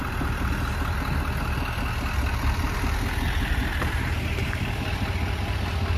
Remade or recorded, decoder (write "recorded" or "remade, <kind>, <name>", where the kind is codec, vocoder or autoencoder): remade, vocoder, BigVGAN v2